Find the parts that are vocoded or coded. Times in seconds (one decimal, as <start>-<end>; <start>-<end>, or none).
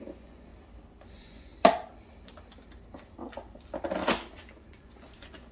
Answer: 0.0-0.5; 1.1-1.5; 4.5-5.5